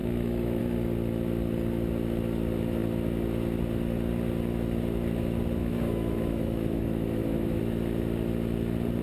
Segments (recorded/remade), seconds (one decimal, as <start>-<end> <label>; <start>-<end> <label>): 0.0-0.6 remade; 0.6-5.6 recorded; 5.6-7.6 remade; 7.6-9.0 recorded